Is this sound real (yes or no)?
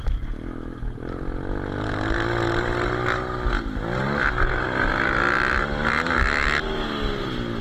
yes